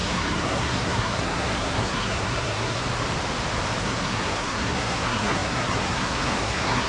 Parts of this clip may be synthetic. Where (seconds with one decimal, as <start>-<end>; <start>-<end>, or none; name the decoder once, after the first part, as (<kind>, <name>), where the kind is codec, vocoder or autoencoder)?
0.0-2.8 (codec, SNAC); 3.8-6.9